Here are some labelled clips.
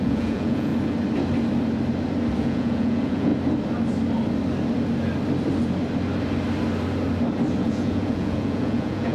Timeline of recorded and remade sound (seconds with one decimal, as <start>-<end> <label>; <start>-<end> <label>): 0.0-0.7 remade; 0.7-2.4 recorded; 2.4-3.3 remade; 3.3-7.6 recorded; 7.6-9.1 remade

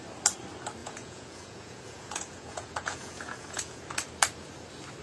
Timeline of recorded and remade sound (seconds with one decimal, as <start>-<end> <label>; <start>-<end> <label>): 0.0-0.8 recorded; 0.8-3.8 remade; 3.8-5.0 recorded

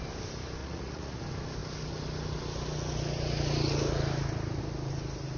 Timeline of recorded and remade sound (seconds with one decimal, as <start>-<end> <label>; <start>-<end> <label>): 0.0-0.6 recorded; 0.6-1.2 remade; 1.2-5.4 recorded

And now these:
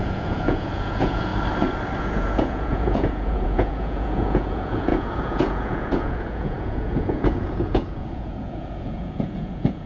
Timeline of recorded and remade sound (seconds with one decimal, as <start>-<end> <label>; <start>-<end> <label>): 0.0-1.3 remade; 1.3-2.0 recorded; 2.0-9.9 remade